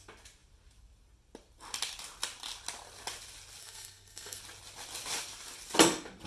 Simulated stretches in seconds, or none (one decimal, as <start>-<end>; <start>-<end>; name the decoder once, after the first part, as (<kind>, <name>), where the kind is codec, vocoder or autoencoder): 3.6-4.4 (codec, SNAC)

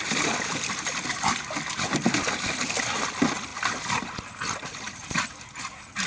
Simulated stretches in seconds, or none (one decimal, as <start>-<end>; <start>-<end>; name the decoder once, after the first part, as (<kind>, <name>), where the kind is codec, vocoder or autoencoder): none

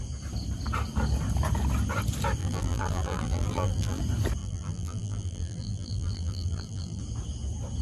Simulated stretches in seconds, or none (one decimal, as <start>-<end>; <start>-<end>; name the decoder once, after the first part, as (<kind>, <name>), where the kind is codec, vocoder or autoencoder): 2.4-4.0 (vocoder, BigVGAN v2); 4.4-7.0

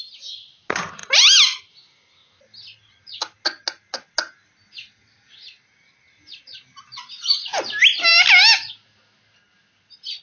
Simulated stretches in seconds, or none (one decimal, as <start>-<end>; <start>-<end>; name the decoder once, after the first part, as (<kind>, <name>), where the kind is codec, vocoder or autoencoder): none

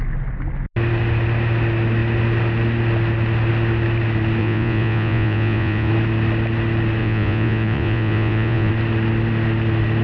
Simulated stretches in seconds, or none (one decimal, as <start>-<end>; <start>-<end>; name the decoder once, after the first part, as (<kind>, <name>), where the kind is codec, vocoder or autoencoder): 4.4-5.9 (vocoder, Vocos); 7.0-8.7

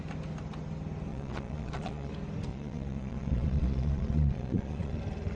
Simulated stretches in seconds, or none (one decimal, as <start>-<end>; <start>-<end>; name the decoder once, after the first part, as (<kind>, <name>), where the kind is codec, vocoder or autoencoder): 1.1-2.1 (vocoder, Vocos); 2.5-5.0